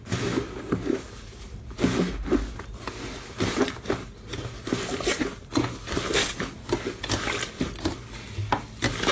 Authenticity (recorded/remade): recorded